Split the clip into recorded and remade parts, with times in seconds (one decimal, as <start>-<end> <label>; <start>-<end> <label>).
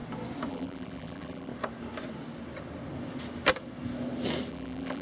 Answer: 0.0-0.5 recorded; 0.5-1.5 remade; 1.5-4.5 recorded; 4.5-5.0 remade